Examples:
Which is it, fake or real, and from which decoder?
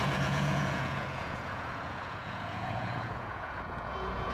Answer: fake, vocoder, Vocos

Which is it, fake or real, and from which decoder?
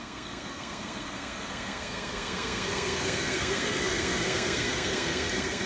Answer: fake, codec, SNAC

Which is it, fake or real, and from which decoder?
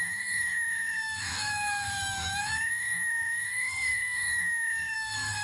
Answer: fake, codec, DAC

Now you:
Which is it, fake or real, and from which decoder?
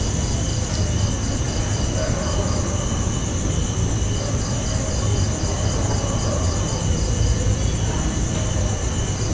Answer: real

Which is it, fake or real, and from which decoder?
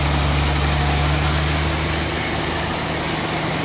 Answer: real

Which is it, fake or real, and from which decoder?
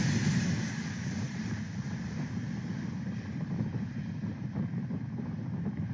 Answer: fake, vocoder, BigVGAN v2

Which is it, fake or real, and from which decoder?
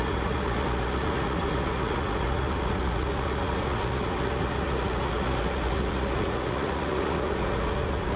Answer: fake, vocoder, Vocos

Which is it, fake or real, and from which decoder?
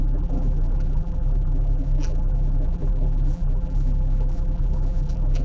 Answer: fake, vocoder, BigVGAN v2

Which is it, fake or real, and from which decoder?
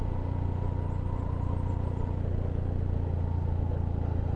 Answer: real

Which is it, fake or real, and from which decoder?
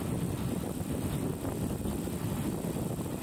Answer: real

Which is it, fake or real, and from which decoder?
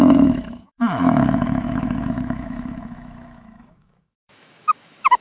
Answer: fake, autoencoder, DAC-VAE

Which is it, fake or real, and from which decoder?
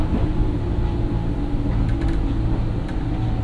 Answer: real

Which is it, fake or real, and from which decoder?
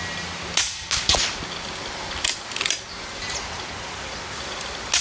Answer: real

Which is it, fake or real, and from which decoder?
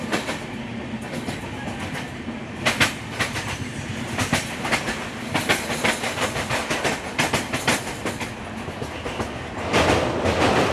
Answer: real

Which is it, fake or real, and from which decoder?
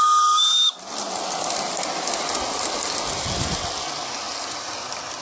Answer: real